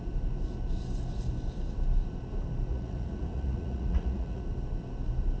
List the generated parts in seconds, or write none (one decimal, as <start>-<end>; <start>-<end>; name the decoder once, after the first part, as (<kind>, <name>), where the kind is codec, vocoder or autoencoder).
2.7-4.4 (vocoder, Vocos)